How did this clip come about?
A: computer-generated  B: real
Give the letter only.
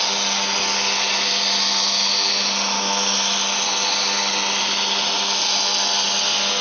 B